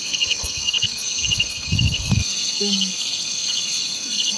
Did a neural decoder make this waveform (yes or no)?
yes